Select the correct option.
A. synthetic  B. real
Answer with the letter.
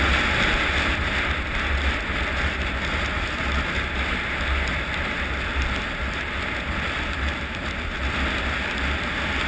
B